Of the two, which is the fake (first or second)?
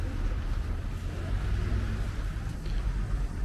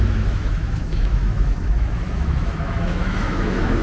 second